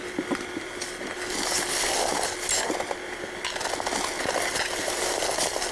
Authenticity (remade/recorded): recorded